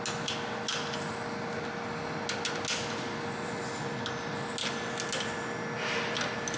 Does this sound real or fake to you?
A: real